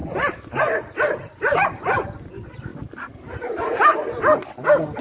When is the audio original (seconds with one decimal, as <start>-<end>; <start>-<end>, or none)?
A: 0.0-5.0